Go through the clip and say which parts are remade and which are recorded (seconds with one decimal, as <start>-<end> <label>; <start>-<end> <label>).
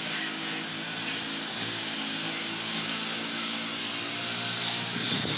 0.0-0.7 remade; 0.7-1.5 recorded; 1.5-3.8 remade; 3.8-4.6 recorded; 4.6-5.4 remade